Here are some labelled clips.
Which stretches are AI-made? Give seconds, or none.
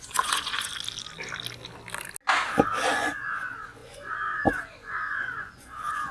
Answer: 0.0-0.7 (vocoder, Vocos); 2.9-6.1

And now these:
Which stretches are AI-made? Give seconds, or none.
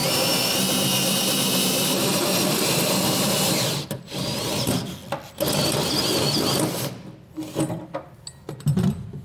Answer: 0.0-4.0 (vocoder, BigVGAN v2)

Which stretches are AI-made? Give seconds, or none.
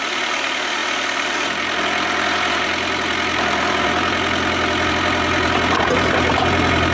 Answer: 0.0-6.9 (vocoder, BigVGAN v2)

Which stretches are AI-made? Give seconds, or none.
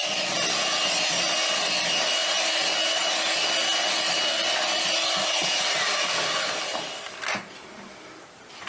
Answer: none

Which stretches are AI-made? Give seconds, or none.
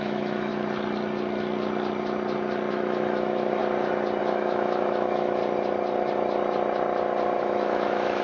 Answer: 0.0-0.5 (autoencoder, DAC-VAE); 2.7-3.6; 4.2-5.4; 7.4-8.2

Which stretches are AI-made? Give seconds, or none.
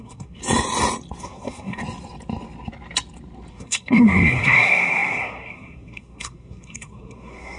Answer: 0.0-0.4 (codec, SNAC); 1.2-1.8; 3.5-7.6